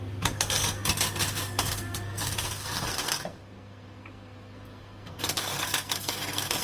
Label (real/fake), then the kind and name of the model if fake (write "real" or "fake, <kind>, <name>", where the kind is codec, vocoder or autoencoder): fake, codec, SNAC